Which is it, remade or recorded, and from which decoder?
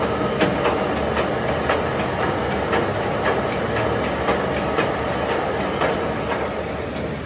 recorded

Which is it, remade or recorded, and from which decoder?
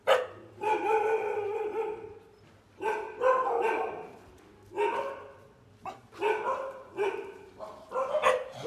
recorded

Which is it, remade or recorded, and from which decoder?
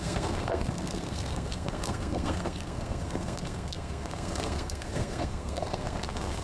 remade, codec, SNAC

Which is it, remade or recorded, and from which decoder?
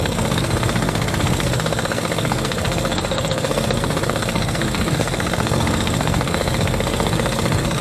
remade, codec, SNAC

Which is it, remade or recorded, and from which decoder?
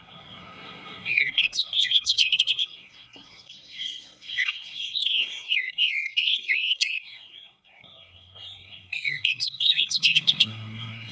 remade, codec, SNAC